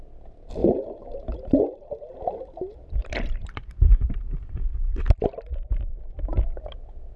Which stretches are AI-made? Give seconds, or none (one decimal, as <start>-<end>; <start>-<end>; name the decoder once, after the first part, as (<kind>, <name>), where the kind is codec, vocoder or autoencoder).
0.6-1.6 (vocoder, BigVGAN v2); 2.7-5.8